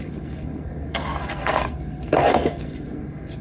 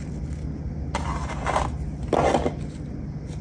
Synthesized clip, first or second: first